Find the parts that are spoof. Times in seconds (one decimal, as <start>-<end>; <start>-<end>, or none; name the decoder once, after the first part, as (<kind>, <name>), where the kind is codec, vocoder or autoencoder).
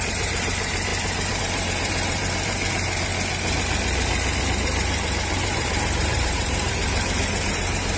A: 0.0-3.1 (vocoder, BigVGAN v2); 4.4-6.8; 7.5-8.0